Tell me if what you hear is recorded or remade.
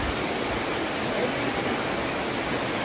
recorded